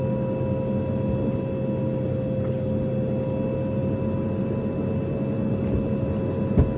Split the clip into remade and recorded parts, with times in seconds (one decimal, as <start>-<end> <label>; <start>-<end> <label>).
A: 0.0-6.8 recorded